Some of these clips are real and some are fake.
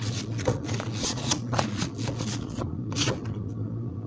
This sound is fake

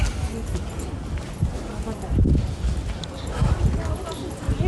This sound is real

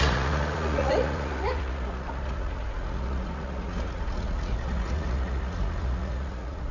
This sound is fake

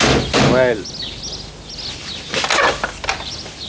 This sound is real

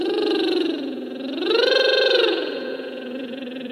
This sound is fake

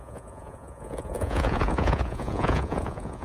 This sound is fake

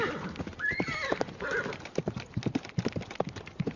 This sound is real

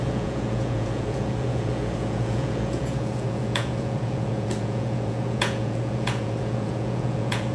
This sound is fake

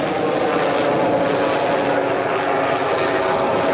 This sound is real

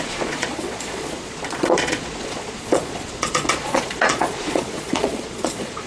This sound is fake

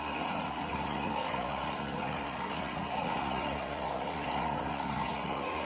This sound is fake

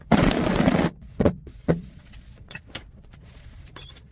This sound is fake